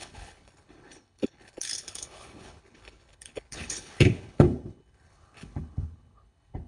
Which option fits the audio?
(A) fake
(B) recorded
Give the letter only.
A